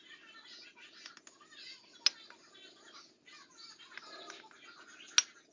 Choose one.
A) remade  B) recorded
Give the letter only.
B